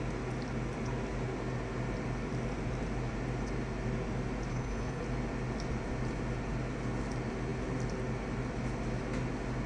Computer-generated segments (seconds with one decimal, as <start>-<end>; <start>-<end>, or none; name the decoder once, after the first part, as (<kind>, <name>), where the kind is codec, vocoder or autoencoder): 4.5-5.0 (codec, HILCodec)